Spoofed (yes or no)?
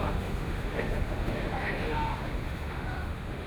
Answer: yes